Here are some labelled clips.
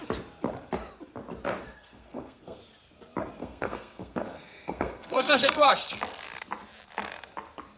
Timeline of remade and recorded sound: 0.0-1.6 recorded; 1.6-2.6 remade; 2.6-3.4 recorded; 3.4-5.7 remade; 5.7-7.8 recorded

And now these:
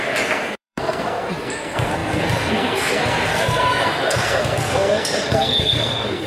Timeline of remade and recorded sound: 0.0-6.3 remade

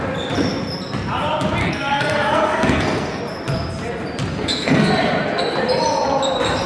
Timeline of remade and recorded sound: 0.0-1.6 recorded; 1.6-3.2 remade; 3.2-4.3 recorded; 4.3-4.9 remade; 4.9-6.7 recorded

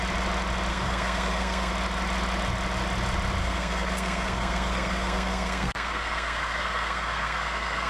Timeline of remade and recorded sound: 0.0-0.7 recorded; 0.7-1.7 remade; 1.7-3.4 recorded; 3.4-7.9 remade